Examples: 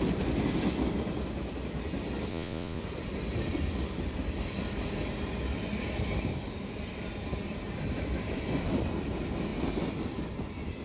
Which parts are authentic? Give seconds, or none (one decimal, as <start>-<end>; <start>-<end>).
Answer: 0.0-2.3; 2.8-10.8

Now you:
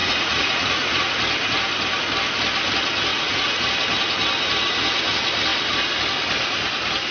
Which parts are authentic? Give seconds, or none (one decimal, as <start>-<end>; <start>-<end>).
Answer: 1.1-3.1; 3.7-7.1

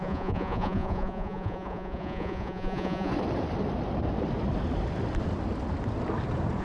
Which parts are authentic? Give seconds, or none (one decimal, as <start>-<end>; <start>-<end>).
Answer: 3.1-6.6

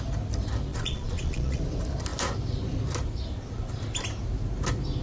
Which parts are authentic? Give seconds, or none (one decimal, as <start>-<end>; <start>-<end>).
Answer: 0.0-0.7; 1.6-5.0

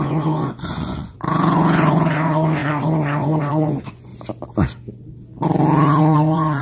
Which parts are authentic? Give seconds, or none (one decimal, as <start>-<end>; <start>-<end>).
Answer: 4.1-6.0

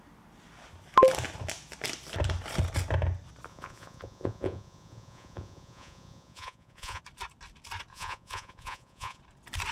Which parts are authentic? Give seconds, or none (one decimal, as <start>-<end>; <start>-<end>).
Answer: 0.0-3.5; 7.0-7.9; 9.2-9.7

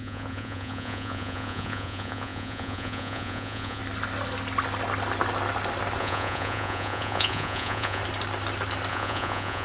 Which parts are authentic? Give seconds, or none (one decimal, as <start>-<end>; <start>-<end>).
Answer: 3.8-6.0; 8.0-8.9